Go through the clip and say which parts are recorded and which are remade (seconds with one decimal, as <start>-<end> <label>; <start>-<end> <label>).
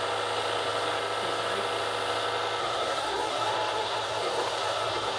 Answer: 0.0-2.6 recorded; 2.6-5.2 remade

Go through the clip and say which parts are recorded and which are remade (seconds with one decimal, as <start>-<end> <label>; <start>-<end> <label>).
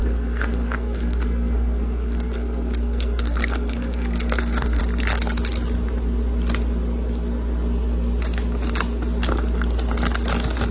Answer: 0.0-4.8 remade; 4.8-10.7 recorded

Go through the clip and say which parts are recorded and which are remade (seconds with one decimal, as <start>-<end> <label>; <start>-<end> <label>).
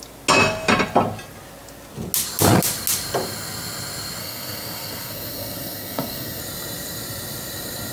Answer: 0.0-4.2 recorded; 4.2-6.4 remade; 6.4-7.9 recorded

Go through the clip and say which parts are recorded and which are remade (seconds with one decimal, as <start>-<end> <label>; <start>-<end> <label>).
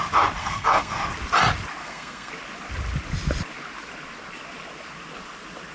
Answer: 0.0-0.4 recorded; 0.4-1.0 remade; 1.0-1.8 recorded; 1.8-2.3 remade; 2.3-5.7 recorded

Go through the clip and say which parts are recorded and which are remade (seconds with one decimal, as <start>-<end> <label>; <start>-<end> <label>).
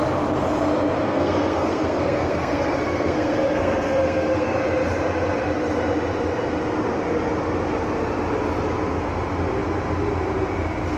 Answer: 0.0-1.0 recorded; 1.0-4.6 remade; 4.6-11.0 recorded